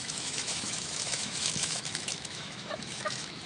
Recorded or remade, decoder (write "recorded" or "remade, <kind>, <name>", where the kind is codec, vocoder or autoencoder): remade, autoencoder, DAC-VAE